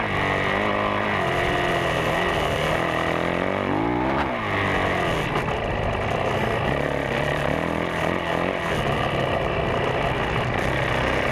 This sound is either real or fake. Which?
real